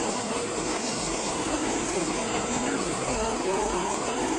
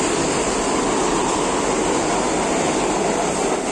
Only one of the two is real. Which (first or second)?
second